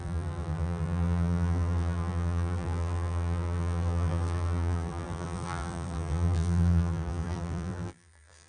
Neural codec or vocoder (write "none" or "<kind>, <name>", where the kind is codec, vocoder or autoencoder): vocoder, BigVGAN v2